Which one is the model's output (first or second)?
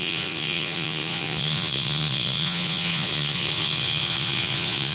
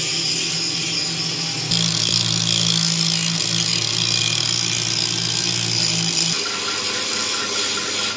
first